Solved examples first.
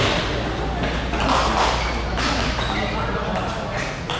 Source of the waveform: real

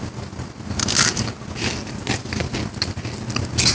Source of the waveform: real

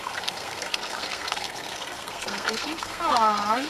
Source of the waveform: fake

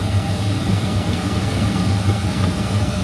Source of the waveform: fake